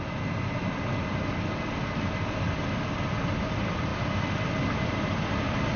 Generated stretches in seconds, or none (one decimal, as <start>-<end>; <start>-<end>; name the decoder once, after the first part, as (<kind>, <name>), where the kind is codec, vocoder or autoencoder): none